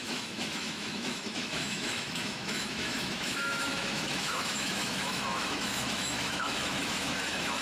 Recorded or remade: remade